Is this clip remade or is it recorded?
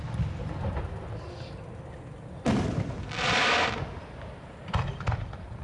recorded